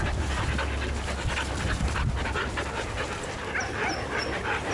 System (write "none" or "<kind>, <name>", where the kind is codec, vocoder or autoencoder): none